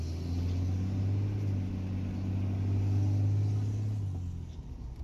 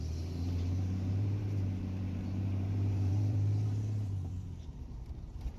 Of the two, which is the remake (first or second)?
second